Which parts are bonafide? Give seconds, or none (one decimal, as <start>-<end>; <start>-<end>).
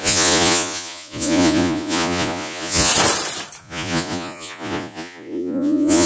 2.9-3.6